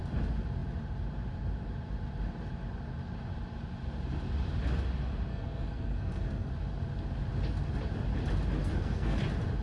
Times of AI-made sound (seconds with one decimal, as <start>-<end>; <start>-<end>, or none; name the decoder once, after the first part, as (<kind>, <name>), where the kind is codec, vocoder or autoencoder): 5.3-6.5 (codec, SNAC); 8.6-9.2